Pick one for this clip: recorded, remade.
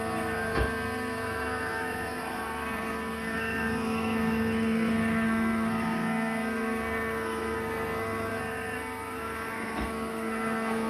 remade